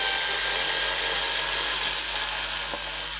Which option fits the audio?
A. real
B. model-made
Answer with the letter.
A